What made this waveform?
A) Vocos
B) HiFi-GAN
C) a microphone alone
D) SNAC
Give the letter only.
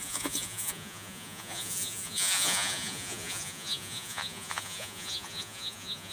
A